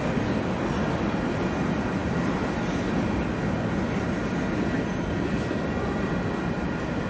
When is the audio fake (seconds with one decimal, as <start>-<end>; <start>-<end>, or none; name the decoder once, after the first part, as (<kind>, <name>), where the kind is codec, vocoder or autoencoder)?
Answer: none